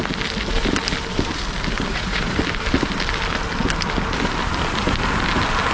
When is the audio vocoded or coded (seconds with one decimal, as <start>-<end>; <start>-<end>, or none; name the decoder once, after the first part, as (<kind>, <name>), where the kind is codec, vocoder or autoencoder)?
1.9-2.4 (vocoder, Vocos)